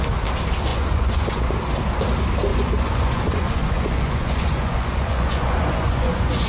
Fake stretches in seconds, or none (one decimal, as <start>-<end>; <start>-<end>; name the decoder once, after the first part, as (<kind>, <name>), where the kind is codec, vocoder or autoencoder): 0.7-1.5 (vocoder, Vocos); 2.5-6.5